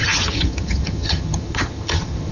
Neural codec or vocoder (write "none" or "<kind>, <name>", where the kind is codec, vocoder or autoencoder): vocoder, HiFi-GAN